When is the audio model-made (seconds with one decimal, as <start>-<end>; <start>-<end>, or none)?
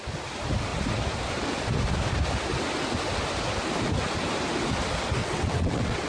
5.2-6.1